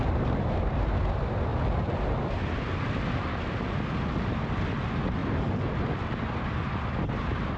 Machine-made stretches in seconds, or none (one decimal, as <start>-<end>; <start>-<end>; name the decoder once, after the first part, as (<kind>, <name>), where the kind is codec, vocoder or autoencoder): 1.5-2.1 (vocoder, BigVGAN v2)